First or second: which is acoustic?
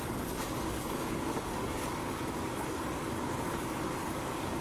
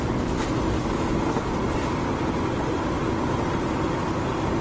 second